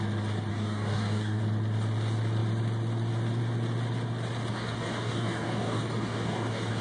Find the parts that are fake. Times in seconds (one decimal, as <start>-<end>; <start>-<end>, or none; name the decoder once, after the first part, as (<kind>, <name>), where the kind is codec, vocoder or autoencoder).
0.5-1.4 (codec, DAC); 4.5-6.8